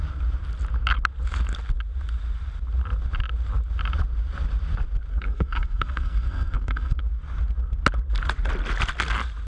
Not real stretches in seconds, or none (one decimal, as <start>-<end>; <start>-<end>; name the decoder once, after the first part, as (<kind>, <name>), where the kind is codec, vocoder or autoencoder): 5.1-7.0 (codec, SNAC)